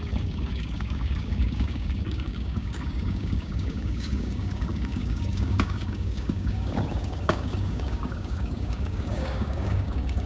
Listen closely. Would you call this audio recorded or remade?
remade